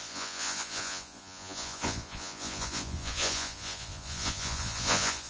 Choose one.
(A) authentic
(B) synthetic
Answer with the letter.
B